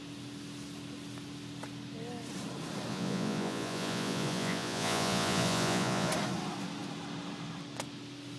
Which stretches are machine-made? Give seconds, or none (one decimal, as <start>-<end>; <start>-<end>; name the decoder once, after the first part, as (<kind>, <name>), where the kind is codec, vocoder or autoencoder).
2.9-6.1 (vocoder, Vocos)

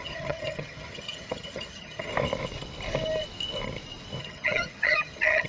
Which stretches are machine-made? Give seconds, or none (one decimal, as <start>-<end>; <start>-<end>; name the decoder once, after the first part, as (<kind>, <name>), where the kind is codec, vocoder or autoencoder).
0.0-2.1 (vocoder, HiFi-GAN); 4.2-5.5